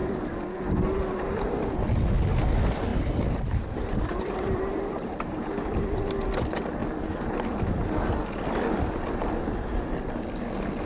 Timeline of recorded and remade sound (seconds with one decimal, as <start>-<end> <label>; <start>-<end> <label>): 0.0-2.9 recorded; 2.9-5.6 remade; 5.6-10.9 recorded